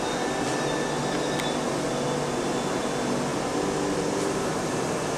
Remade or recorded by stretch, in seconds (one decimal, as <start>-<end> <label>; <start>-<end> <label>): 0.0-5.2 recorded